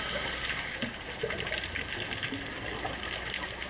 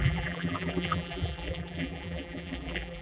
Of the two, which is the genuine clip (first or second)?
first